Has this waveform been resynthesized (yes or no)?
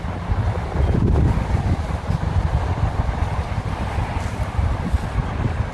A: no